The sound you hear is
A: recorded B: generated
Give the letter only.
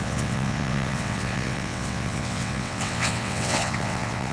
B